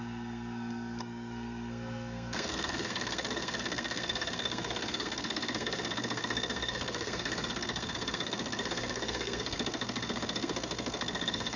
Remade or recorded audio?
remade